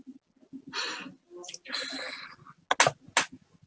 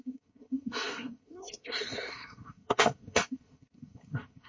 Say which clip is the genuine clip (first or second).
first